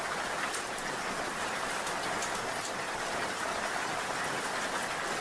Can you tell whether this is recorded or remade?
recorded